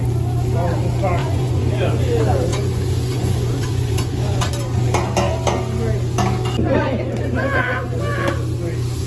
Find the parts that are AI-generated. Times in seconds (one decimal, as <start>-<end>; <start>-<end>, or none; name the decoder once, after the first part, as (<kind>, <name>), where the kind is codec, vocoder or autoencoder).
1.2-1.9 (vocoder, Vocos); 2.5-4.5